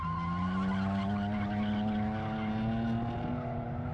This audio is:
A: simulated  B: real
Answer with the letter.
B